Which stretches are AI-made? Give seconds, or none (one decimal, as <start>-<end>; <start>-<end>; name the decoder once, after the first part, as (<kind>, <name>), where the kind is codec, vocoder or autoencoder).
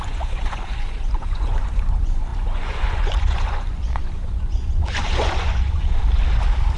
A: 0.0-6.0 (vocoder, Vocos)